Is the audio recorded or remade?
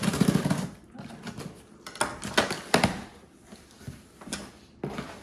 recorded